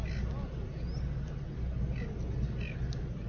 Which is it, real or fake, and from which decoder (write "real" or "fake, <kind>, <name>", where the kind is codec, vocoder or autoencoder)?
real